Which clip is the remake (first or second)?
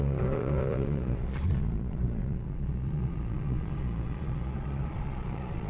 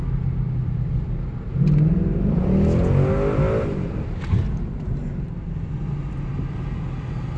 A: first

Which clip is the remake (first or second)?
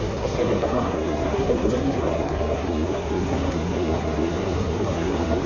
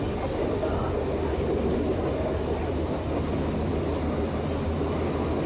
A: first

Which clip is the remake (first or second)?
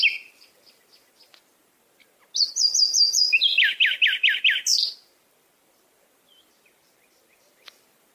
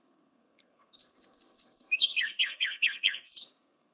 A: second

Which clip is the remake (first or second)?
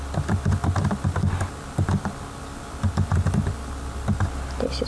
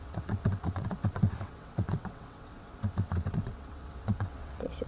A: second